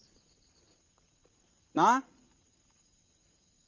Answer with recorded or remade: remade